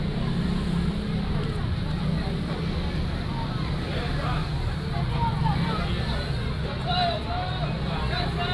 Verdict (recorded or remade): recorded